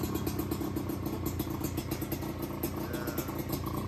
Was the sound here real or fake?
real